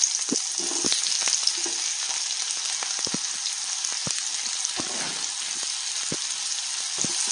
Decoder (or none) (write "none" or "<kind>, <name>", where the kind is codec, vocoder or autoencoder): none